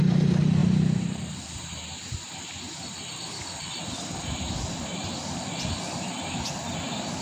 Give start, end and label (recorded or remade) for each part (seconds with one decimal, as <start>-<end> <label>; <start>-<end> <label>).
0.0-0.6 recorded; 0.6-3.1 remade; 3.1-7.2 recorded